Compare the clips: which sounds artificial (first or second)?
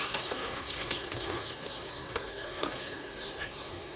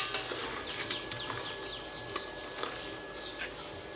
first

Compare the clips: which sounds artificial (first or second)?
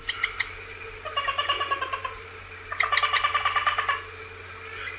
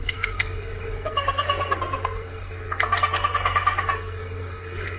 second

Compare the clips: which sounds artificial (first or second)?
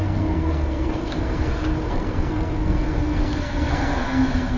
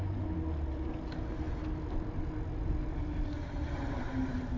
first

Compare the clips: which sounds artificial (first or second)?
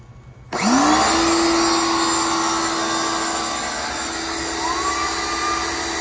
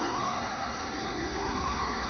second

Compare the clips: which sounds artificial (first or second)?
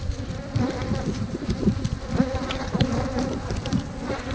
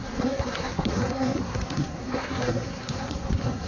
second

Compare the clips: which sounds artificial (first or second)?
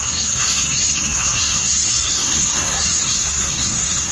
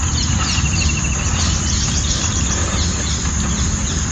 first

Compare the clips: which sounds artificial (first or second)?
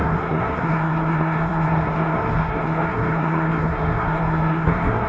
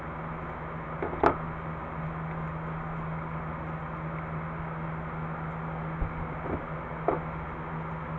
first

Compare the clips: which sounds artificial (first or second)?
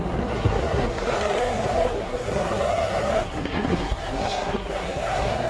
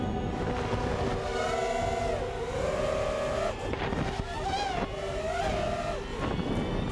first